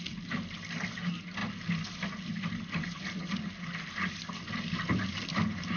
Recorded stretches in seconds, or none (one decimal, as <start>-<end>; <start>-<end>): 0.0-5.8